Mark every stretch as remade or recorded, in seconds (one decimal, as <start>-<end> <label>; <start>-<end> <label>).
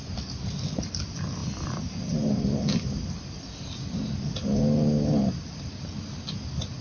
0.0-6.8 recorded